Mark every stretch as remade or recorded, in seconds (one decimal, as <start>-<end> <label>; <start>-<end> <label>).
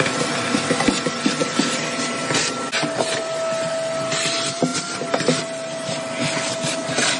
0.0-7.2 recorded